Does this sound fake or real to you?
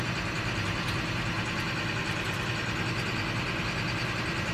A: real